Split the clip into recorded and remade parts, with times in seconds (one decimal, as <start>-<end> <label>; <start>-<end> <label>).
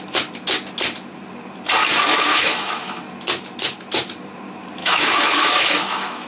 0.0-2.3 recorded; 2.3-3.0 remade; 3.0-4.8 recorded; 4.8-6.3 remade